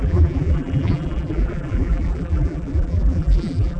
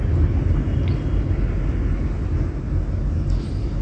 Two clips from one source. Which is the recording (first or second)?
second